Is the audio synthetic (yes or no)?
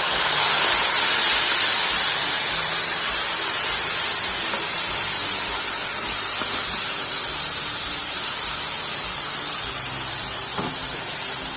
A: no